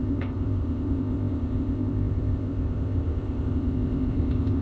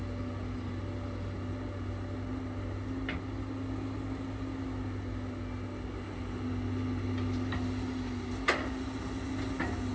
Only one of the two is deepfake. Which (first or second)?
first